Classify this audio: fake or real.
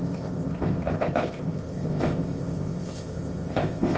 fake